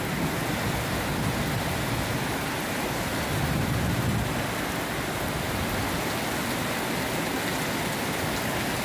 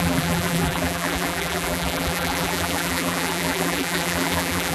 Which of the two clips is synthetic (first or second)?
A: second